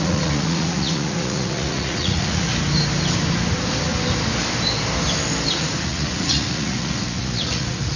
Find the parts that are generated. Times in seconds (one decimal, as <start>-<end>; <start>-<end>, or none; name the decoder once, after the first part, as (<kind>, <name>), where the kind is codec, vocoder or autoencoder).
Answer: 0.0-2.5 (vocoder, Vocos); 5.5-8.0